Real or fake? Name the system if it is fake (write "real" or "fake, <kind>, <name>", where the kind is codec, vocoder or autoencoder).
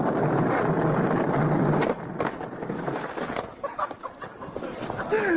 real